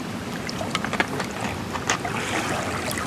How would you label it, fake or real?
fake